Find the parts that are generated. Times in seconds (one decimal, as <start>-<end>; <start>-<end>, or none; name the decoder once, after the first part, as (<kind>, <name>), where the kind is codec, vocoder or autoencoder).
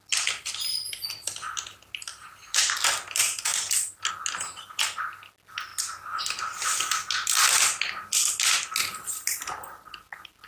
2.1-2.7 (vocoder, BigVGAN v2)